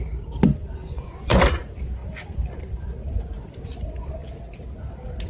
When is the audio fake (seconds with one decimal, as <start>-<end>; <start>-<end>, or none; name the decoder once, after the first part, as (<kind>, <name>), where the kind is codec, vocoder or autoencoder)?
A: 0.8-1.6 (vocoder, Vocos)